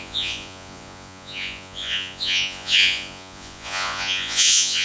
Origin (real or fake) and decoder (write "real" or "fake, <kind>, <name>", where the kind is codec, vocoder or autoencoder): fake, vocoder, Vocos